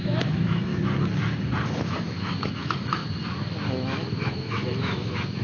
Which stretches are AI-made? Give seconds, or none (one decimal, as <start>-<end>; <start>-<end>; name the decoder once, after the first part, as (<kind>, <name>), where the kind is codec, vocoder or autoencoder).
0.0-0.7 (autoencoder, DAC-VAE); 1.8-3.0; 3.7-5.4